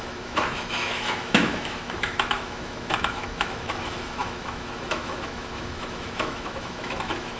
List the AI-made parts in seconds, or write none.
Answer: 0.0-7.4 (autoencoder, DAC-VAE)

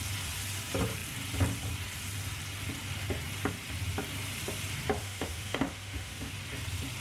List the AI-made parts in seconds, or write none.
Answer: 5.0-6.3 (autoencoder, DAC-VAE)

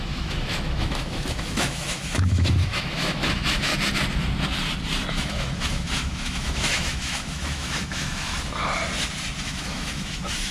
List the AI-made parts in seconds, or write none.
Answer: 0.0-3.7 (autoencoder, DAC-VAE); 5.1-8.3; 9.4-10.5

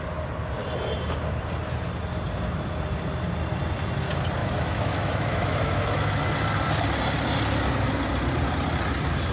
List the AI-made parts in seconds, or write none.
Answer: 4.4-6.1 (autoencoder, DAC-VAE)

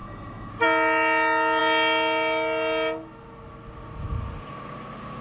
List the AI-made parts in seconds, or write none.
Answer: 0.0-0.5 (autoencoder, DAC-VAE)

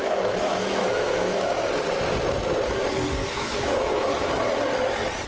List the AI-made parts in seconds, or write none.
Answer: 0.0-1.5 (autoencoder, DAC-VAE); 3.2-4.3